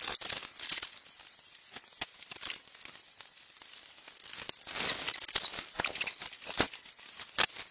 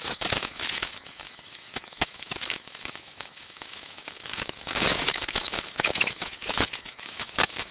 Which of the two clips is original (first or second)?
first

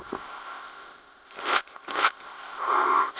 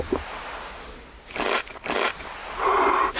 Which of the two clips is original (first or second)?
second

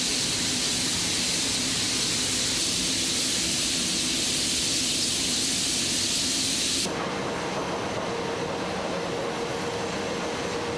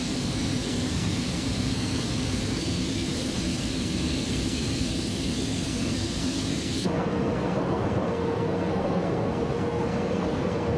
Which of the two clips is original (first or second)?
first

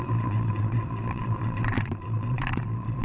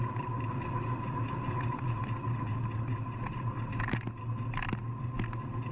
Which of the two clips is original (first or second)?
second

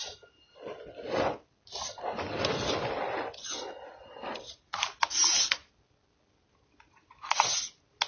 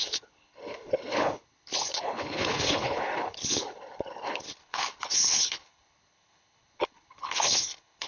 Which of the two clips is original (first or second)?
first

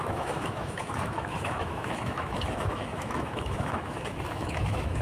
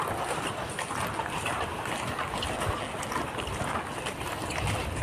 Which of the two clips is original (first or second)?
second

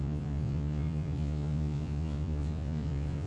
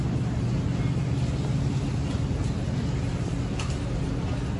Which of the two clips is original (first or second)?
second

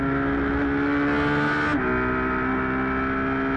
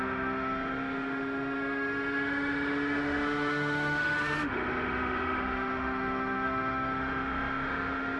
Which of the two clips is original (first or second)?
first